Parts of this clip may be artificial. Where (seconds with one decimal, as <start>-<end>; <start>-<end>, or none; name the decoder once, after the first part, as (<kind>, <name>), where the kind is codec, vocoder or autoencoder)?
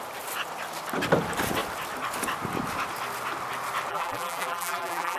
3.9-5.2 (vocoder, BigVGAN v2)